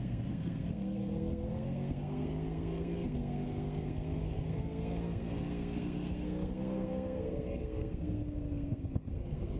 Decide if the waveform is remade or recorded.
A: remade